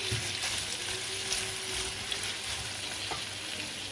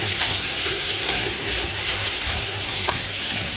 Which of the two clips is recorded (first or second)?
first